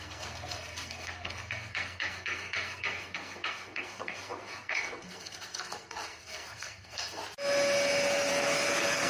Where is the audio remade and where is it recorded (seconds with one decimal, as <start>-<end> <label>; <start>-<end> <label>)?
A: 0.0-7.2 remade; 7.2-8.3 recorded; 8.3-9.1 remade